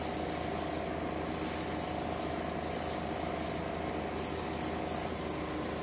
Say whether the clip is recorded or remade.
recorded